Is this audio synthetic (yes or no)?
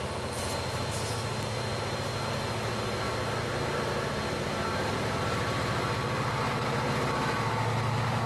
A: no